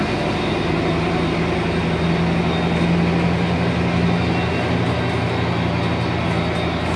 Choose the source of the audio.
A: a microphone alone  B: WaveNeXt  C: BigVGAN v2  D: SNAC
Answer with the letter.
A